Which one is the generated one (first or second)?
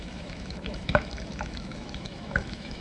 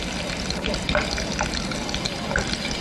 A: first